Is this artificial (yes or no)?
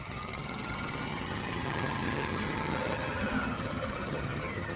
yes